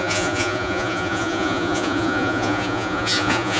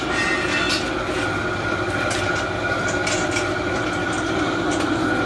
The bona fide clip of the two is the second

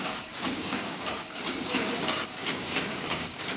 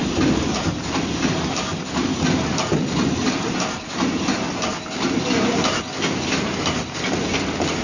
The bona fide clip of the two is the second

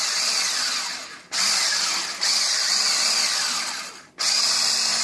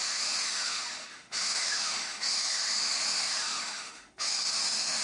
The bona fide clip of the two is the first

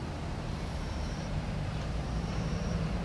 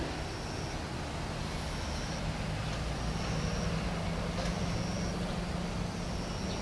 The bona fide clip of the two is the second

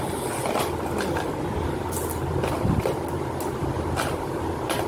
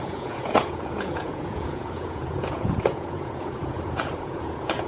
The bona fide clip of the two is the first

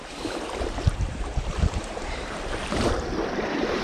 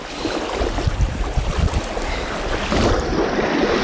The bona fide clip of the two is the second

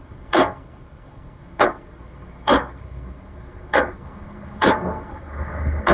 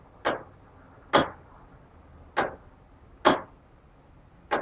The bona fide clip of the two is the second